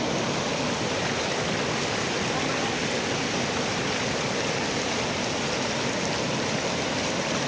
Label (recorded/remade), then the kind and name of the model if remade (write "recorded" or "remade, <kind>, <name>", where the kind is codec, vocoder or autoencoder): recorded